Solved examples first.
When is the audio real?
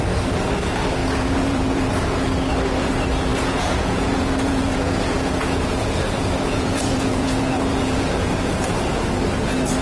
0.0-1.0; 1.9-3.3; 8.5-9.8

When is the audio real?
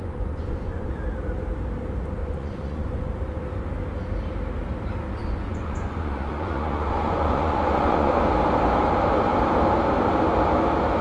0.9-2.2; 3.1-5.2; 8.1-11.0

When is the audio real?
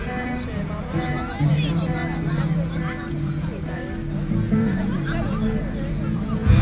2.0-3.1; 3.8-4.5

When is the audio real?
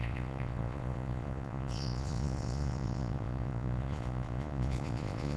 none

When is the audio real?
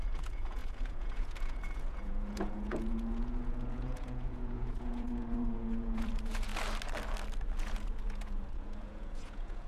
6.5-7.6